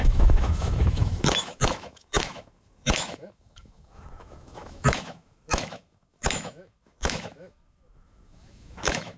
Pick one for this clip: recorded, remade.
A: remade